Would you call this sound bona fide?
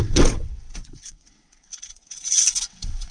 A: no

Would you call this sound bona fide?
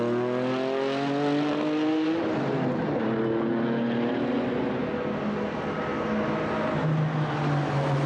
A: yes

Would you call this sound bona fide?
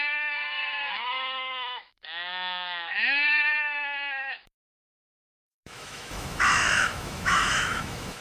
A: no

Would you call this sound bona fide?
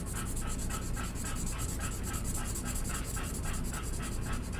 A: yes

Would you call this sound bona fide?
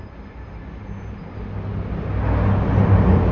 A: yes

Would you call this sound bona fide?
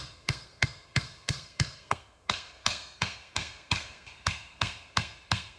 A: no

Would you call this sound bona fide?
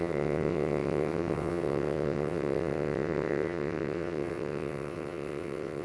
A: no